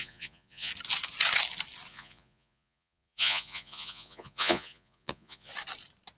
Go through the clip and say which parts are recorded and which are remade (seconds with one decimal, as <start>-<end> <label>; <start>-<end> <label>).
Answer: 0.0-0.7 remade; 0.7-1.9 recorded; 1.9-5.5 remade; 5.5-6.2 recorded